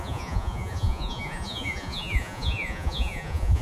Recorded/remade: remade